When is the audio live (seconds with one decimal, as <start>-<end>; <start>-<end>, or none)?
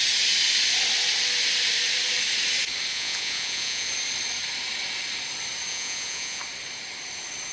0.0-2.9; 3.9-5.7; 6.4-7.5